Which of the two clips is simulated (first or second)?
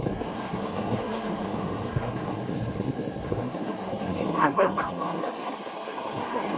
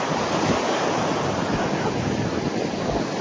first